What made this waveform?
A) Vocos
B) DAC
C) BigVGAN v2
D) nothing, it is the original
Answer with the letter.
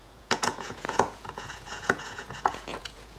A